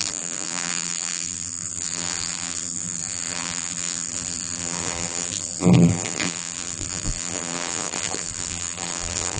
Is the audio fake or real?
fake